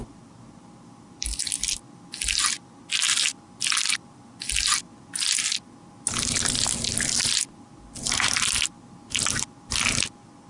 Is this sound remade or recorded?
recorded